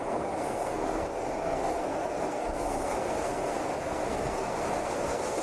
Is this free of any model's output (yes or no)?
no